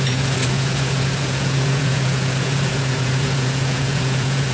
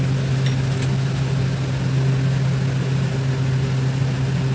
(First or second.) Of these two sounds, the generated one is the first